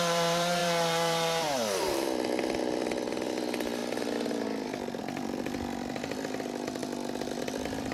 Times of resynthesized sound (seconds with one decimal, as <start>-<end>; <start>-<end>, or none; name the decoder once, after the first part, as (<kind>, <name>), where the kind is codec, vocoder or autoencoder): 0.0-6.8 (vocoder, BigVGAN v2); 7.4-7.9